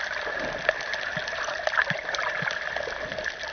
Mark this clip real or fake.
real